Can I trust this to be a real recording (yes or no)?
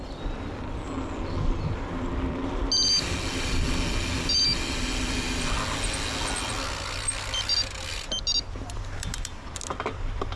yes